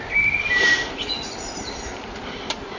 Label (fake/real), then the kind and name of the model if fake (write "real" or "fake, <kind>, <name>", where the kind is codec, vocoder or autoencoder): real